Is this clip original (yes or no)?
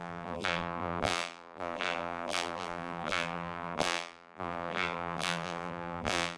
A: no